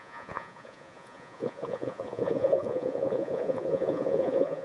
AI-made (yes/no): yes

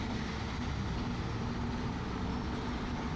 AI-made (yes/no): no